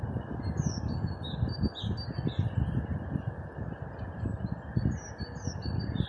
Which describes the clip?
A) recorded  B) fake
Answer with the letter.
A